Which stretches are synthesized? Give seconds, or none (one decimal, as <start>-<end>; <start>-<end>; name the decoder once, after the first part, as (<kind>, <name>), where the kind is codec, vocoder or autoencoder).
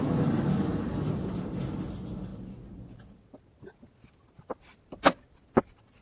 none